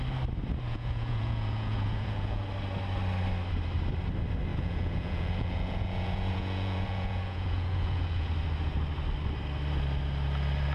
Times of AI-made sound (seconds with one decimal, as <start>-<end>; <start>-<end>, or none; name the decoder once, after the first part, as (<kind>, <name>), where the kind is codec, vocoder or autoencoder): 0.7-2.4 (vocoder, Vocos); 4.5-8.3

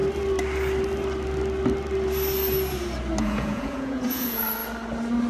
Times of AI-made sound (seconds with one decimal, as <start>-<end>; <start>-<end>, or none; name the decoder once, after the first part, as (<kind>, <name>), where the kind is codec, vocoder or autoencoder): 3.2-4.6 (vocoder, Vocos)

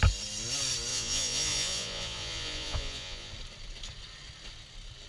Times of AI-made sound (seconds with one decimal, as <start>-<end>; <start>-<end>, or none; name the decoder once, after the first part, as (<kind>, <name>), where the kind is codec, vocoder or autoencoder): 0.9-3.3 (vocoder, Vocos)